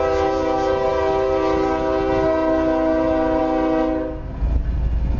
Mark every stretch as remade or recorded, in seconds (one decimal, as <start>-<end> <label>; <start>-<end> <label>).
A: 0.0-5.2 recorded